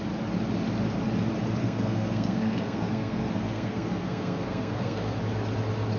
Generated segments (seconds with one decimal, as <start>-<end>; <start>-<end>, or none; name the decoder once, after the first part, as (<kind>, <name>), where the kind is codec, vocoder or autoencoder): 1.6-5.2 (codec, SNAC)